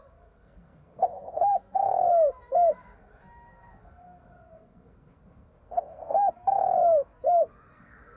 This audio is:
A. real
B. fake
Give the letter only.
B